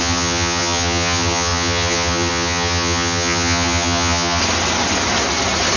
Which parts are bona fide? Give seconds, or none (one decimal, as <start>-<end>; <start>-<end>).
4.4-5.8